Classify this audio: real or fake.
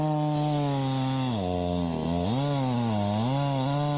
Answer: real